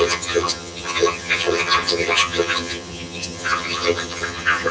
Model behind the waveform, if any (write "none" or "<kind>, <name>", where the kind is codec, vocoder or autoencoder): vocoder, HiFi-GAN